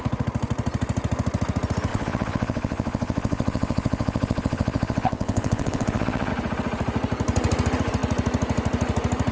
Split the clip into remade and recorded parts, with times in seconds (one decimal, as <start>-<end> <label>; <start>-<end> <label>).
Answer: 0.0-1.9 recorded; 1.9-6.3 remade; 6.3-9.3 recorded